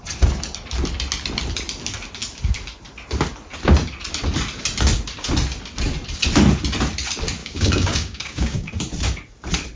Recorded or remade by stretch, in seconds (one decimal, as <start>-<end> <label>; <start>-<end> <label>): 0.0-7.4 recorded; 7.4-8.7 remade; 8.7-9.8 recorded